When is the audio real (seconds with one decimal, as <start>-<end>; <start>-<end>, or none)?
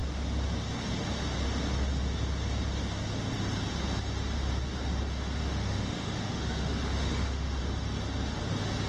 0.0-5.4; 7.6-8.9